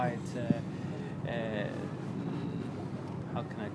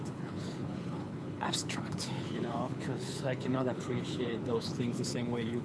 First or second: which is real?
first